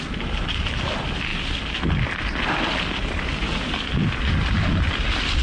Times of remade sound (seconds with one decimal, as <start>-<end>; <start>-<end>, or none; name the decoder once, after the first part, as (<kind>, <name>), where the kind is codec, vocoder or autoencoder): 1.3-4.5 (vocoder, BigVGAN v2)